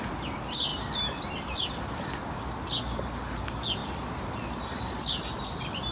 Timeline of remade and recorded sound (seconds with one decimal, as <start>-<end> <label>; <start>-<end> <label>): 0.0-5.9 recorded